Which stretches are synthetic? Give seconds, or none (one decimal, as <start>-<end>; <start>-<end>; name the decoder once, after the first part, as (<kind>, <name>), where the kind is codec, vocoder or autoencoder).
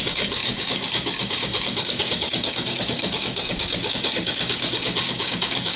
0.0-5.8 (codec, DAC)